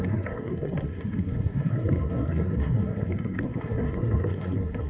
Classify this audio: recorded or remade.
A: remade